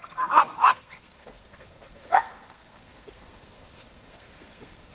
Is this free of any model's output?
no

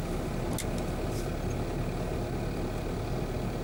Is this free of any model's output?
yes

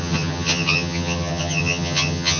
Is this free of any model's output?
no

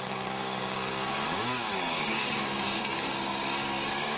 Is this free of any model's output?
no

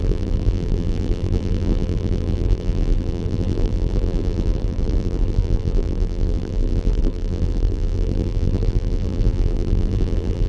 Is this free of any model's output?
no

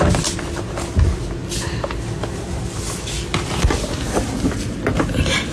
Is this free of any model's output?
yes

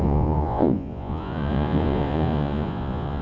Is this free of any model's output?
no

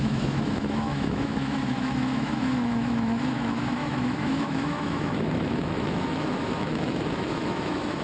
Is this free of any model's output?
no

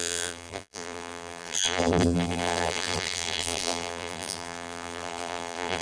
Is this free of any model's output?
no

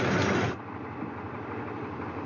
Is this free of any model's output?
yes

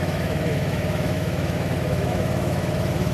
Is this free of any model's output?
no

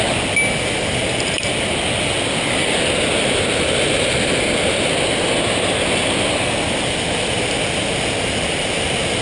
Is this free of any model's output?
yes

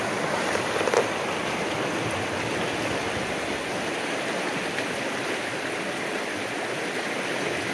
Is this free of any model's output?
yes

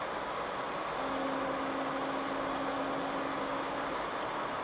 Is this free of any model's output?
yes